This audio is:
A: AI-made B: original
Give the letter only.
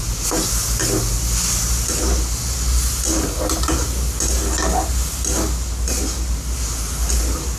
B